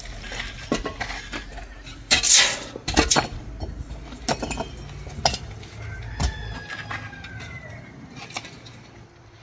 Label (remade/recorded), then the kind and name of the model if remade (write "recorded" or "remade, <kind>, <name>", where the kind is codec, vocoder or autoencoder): recorded